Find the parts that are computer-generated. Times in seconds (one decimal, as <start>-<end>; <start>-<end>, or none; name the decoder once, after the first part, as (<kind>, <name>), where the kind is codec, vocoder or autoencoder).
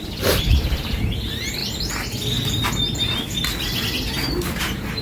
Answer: 0.0-1.6 (vocoder, BigVGAN v2); 4.6-5.0